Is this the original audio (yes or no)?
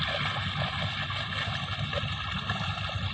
yes